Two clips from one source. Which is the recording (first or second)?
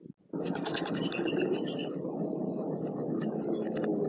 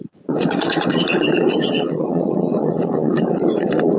first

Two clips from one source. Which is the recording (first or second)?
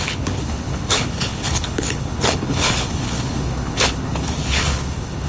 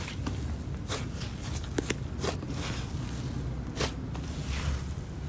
second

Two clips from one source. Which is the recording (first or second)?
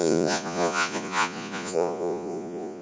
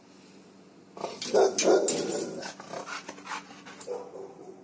second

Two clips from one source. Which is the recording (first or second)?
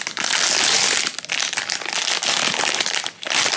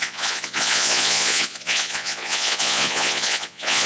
first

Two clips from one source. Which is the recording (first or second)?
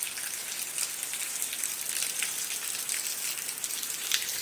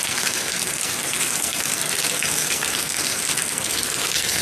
first